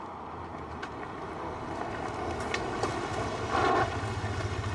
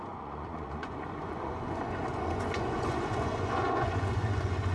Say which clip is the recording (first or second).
first